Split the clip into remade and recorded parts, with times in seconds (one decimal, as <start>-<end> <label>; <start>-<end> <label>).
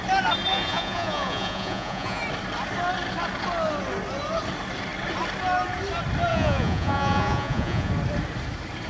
0.0-0.5 recorded; 0.5-2.2 remade; 2.2-6.3 recorded; 6.3-7.9 remade; 7.9-8.9 recorded